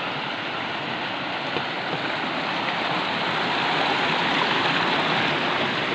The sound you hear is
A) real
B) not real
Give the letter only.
A